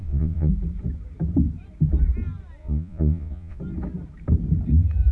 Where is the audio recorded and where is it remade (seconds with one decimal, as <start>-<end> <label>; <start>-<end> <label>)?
0.0-0.5 remade; 0.5-2.6 recorded; 2.6-3.6 remade; 3.6-5.1 recorded